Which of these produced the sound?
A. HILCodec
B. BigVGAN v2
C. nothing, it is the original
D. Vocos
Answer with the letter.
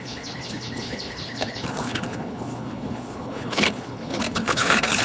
A